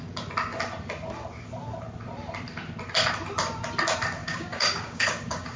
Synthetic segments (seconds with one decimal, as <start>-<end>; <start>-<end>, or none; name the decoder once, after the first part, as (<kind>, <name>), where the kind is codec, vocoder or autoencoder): 4.2-5.6 (codec, DAC)